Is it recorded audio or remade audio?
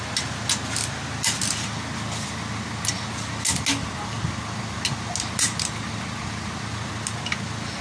recorded